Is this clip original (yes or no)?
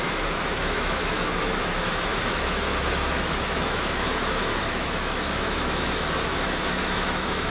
no